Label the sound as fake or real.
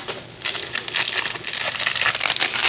real